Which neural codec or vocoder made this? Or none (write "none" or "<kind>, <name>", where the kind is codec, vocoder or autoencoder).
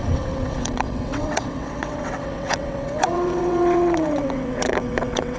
vocoder, WaveNeXt